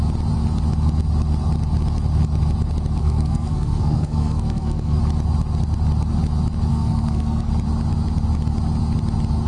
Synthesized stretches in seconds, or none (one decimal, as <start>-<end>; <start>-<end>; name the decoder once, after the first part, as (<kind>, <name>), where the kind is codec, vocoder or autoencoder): 3.0-5.0 (codec, SNAC); 6.7-7.5